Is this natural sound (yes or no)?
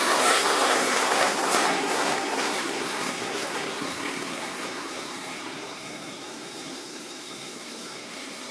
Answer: no